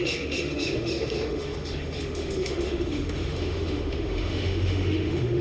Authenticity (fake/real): fake